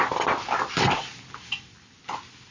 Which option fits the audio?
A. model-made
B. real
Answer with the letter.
B